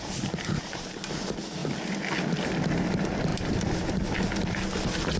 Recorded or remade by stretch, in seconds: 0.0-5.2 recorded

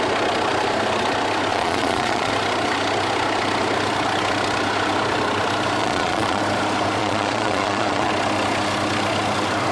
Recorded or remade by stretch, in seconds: 0.0-1.5 recorded; 1.5-2.3 remade; 2.3-5.8 recorded; 5.8-6.4 remade; 6.4-7.0 recorded; 7.0-8.1 remade; 8.1-9.7 recorded

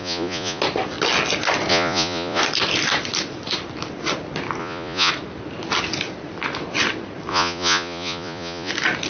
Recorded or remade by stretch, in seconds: 0.0-0.6 remade; 0.6-1.7 recorded; 1.7-2.4 remade; 2.4-4.6 recorded; 4.6-5.1 remade; 5.1-7.3 recorded; 7.3-8.7 remade; 8.7-9.1 recorded

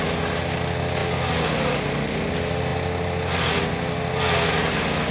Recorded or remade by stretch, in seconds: 0.0-5.1 recorded

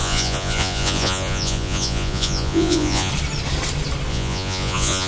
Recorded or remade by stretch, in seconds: 0.0-3.1 remade; 3.1-4.1 recorded; 4.1-5.1 remade